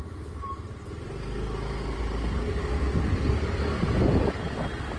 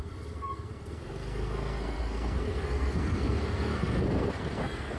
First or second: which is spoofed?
second